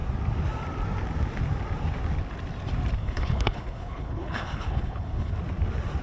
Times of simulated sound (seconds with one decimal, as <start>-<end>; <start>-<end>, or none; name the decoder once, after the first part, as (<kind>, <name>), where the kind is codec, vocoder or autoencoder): 3.0-5.3 (codec, HILCodec)